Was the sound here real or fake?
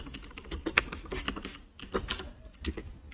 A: real